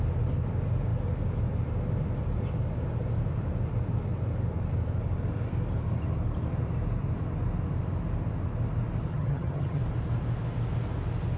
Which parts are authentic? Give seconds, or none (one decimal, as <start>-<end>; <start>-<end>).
0.0-9.1; 9.8-11.4